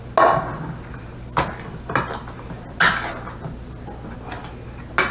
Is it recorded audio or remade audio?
recorded